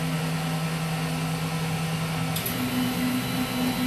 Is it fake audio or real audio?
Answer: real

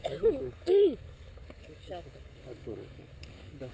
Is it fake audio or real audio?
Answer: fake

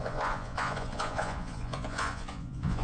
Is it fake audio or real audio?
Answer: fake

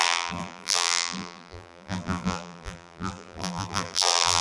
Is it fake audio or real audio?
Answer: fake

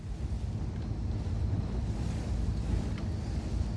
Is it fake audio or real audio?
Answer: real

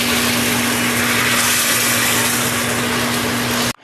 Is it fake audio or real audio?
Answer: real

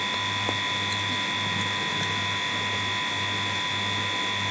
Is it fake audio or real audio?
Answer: real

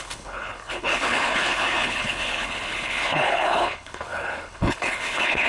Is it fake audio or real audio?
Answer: fake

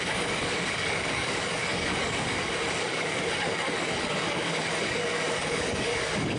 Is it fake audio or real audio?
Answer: fake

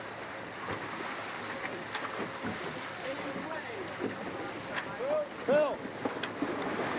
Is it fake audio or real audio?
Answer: real